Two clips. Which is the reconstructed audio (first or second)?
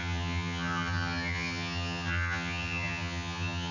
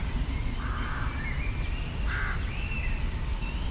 first